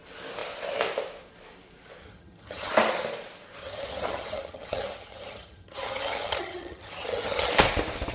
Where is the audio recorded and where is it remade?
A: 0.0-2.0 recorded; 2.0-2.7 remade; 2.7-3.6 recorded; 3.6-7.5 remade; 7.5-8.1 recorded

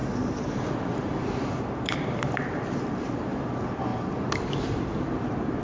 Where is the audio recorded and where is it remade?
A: 0.0-3.4 remade; 3.4-3.9 recorded; 3.9-5.6 remade